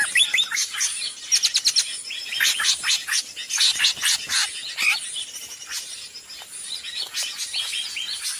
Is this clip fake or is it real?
real